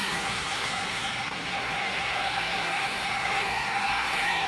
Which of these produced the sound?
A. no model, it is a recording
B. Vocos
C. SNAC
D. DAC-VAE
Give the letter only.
C